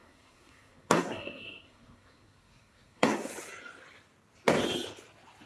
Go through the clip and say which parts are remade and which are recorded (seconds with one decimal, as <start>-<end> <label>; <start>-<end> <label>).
0.0-3.3 remade; 3.3-5.5 recorded